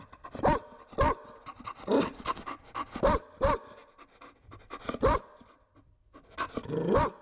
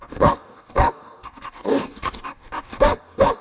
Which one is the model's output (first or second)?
second